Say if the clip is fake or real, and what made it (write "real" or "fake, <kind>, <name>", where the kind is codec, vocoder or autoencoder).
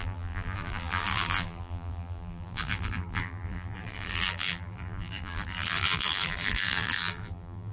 fake, vocoder, BigVGAN v2